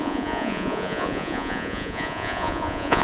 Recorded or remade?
remade